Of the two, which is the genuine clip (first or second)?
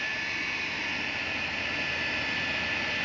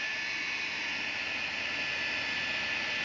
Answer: second